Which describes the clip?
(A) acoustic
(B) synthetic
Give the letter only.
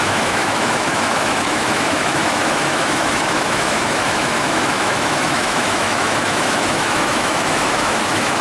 B